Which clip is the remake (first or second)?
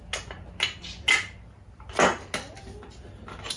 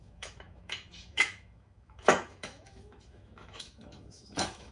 second